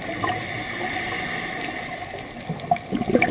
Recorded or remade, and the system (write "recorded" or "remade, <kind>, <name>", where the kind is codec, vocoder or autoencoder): recorded